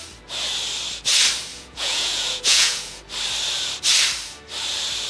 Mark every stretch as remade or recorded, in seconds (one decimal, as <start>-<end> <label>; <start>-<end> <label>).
0.0-1.5 recorded; 1.5-3.0 remade; 3.0-5.1 recorded